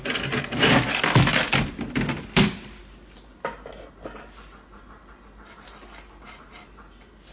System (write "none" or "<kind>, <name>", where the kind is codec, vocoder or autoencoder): none